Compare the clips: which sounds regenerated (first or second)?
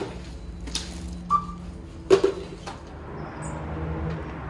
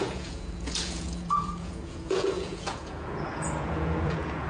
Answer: second